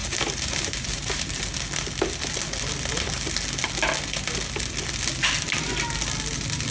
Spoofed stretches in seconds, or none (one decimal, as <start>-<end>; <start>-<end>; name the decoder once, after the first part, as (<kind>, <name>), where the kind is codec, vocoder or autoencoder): 0.0-1.4 (vocoder, BigVGAN v2)